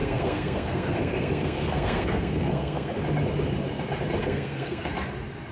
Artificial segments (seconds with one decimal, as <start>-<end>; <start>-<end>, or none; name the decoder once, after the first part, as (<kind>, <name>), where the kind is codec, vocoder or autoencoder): 0.0-2.9 (codec, SNAC); 4.2-4.9